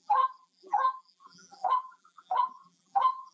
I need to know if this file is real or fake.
fake